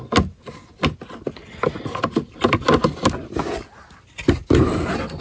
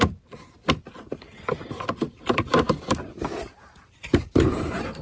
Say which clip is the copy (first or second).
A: second